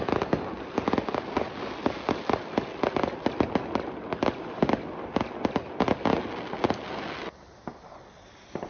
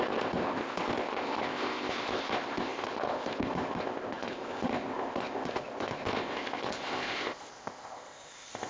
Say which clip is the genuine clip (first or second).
first